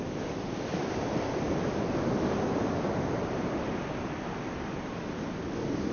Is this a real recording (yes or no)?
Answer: yes